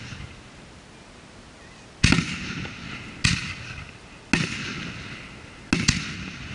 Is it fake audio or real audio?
real